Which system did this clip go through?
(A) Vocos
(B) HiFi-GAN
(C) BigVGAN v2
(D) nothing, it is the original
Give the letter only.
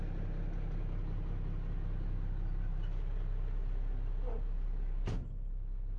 D